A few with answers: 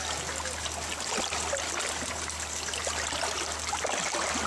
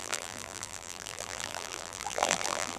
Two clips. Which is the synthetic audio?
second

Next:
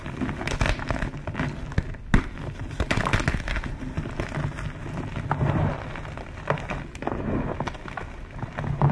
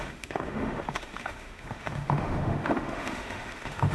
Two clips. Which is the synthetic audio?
second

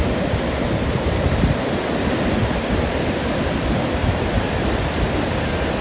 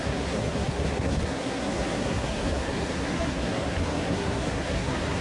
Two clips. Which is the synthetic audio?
second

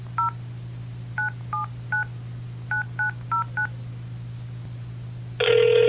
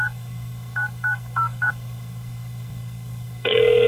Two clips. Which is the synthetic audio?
second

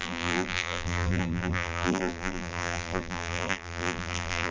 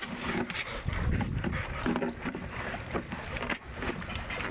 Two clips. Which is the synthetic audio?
first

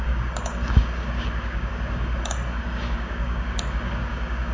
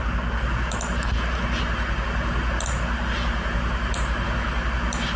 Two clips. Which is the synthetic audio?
first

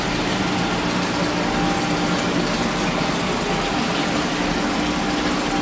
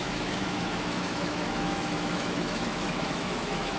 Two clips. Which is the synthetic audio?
second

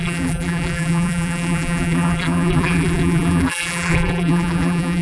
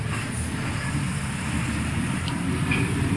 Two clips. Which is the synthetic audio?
first